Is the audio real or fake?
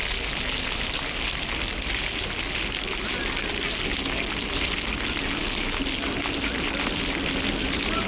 real